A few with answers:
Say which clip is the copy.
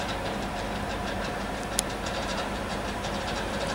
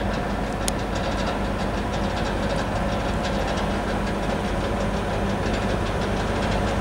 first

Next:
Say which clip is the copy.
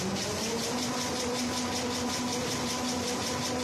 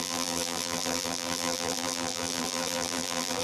second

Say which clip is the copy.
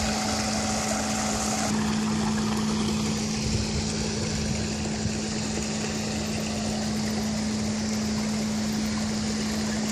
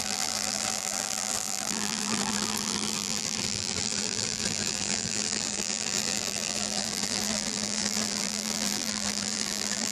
second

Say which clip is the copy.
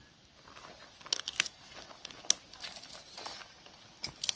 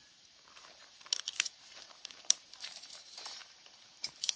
second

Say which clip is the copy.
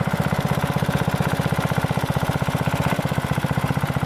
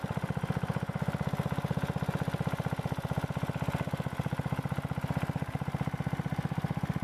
first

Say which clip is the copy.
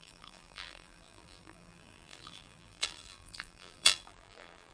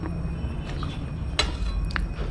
first